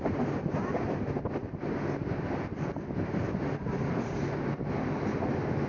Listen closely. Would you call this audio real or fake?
real